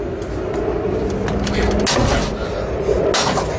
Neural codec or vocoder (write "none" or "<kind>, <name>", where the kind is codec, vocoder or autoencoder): none